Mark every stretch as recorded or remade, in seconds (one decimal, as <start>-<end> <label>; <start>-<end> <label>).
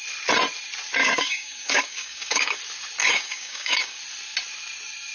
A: 0.0-1.0 recorded; 1.0-2.6 remade; 2.6-3.0 recorded; 3.0-4.0 remade; 4.0-5.1 recorded